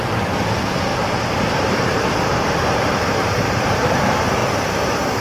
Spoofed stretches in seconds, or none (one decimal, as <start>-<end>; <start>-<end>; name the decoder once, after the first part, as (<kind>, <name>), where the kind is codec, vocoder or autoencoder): 0.9-4.0 (vocoder, BigVGAN v2); 4.4-5.2

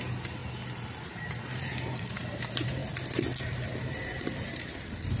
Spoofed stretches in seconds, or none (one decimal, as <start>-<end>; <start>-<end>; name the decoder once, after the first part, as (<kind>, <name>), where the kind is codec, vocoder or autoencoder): 0.0-2.8 (vocoder, BigVGAN v2); 3.4-5.2

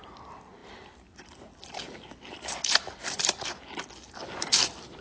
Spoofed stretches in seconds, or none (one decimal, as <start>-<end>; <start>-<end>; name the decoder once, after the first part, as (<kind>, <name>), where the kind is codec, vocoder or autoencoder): 0.0-5.0 (vocoder, BigVGAN v2)

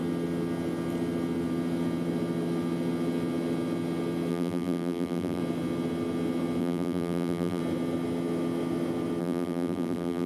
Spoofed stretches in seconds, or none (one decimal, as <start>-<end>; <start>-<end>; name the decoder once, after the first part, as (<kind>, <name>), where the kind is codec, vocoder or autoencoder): 4.3-5.4 (vocoder, BigVGAN v2); 6.6-7.6; 9.2-10.3

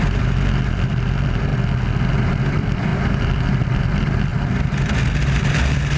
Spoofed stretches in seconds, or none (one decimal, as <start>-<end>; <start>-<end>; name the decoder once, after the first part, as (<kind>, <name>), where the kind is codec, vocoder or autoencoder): 0.0-1.5 (vocoder, BigVGAN v2); 2.3-4.3; 5.5-6.0

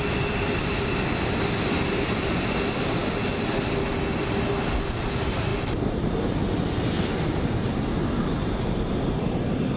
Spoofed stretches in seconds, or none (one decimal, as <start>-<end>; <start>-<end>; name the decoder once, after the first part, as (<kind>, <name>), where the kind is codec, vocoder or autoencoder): 5.5-6.1 (vocoder, BigVGAN v2)

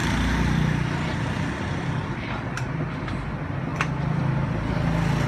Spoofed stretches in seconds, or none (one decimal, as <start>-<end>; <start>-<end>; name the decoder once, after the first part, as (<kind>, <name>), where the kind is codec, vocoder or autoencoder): 0.0-3.0 (vocoder, BigVGAN v2); 3.7-5.3

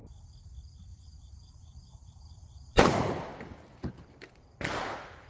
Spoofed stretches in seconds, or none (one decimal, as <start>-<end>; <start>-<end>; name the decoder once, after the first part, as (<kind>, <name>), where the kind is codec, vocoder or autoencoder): 0.9-2.9 (vocoder, BigVGAN v2); 3.3-5.3